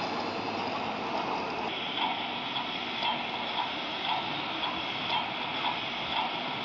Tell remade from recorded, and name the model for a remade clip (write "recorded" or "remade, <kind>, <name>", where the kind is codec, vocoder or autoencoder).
recorded